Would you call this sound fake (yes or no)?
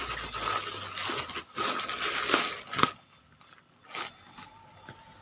no